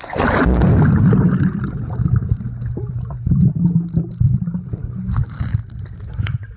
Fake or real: real